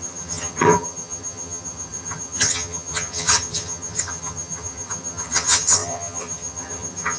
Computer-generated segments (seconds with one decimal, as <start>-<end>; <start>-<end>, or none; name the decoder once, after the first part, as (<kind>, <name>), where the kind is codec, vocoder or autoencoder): 0.0-7.2 (vocoder, HiFi-GAN)